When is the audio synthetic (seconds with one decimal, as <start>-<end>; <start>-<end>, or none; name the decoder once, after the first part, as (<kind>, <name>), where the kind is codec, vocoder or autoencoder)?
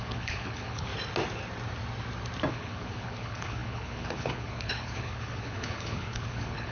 0.0-0.9 (codec, HILCodec); 2.5-6.7